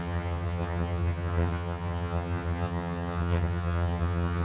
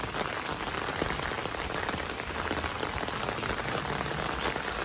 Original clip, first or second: second